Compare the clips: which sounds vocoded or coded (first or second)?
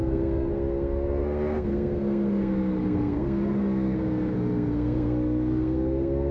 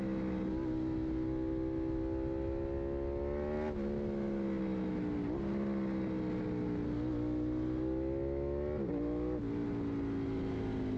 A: first